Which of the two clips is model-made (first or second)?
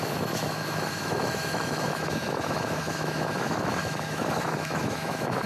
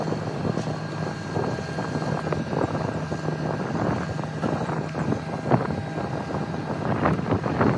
first